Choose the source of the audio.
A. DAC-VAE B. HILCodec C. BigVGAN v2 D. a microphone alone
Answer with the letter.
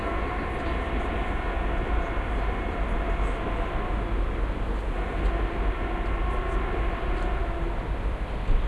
D